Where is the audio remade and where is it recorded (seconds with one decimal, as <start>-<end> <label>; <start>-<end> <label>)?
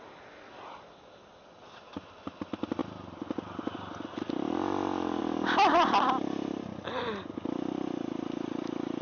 0.0-9.0 recorded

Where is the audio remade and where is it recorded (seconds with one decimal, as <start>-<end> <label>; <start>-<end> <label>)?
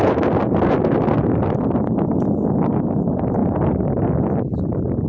0.0-5.1 recorded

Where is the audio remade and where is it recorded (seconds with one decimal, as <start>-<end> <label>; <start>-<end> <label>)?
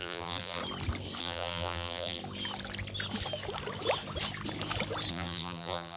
0.0-0.6 remade; 0.6-1.2 recorded; 1.2-2.2 remade; 2.2-5.1 recorded; 5.1-6.0 remade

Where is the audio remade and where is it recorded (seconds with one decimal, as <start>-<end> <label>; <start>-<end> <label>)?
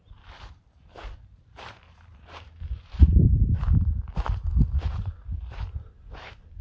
0.0-6.6 remade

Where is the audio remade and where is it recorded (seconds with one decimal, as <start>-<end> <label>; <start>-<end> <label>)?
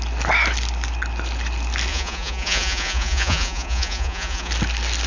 0.0-1.9 recorded; 1.9-4.5 remade; 4.5-5.1 recorded